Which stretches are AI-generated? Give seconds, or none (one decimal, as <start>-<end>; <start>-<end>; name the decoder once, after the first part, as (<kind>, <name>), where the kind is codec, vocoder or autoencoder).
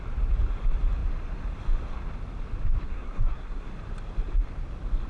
2.8-3.7 (codec, SNAC)